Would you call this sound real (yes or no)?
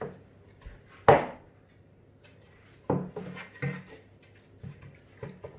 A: yes